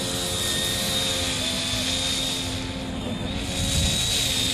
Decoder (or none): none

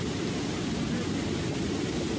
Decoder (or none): none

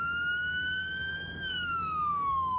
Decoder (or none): codec, DAC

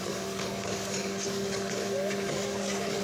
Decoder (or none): codec, DAC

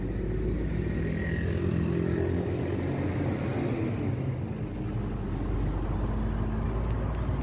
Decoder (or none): none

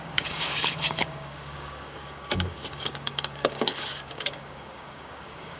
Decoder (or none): codec, DAC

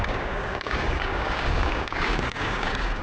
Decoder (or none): codec, DAC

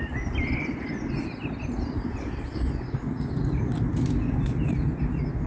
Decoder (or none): none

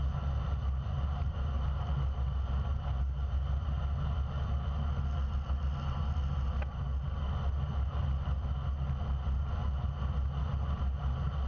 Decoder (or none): none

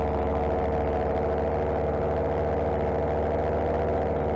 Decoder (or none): none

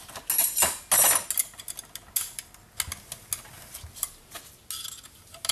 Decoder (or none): none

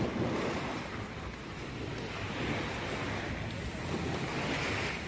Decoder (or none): none